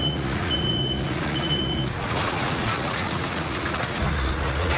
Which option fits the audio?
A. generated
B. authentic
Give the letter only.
A